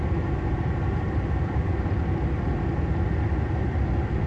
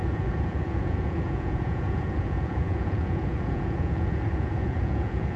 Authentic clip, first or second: first